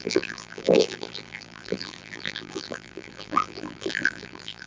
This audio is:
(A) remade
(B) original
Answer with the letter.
A